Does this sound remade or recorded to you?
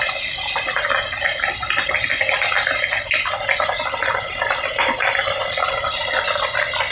recorded